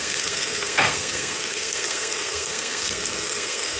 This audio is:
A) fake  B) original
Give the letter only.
A